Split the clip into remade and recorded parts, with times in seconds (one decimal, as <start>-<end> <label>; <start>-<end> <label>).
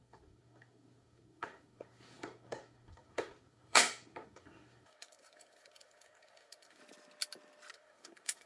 0.0-6.8 remade; 6.8-7.7 recorded; 7.7-8.5 remade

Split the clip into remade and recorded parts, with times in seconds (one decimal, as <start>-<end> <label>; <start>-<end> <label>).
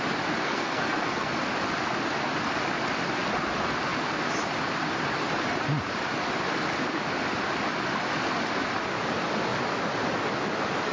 0.0-0.4 recorded; 0.4-1.3 remade; 1.3-10.9 recorded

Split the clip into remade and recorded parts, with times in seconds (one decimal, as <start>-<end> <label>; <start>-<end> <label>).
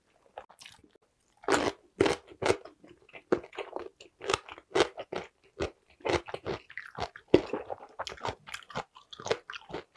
0.0-10.0 recorded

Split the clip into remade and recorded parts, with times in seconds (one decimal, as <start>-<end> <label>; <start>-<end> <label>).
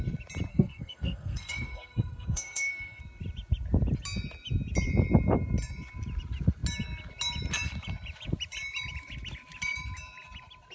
0.0-0.5 recorded; 0.5-3.0 remade; 3.0-10.7 recorded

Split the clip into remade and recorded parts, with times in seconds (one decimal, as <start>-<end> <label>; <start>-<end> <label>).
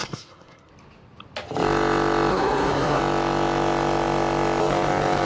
0.0-0.7 remade; 0.7-2.3 recorded; 2.3-3.0 remade; 3.0-5.3 recorded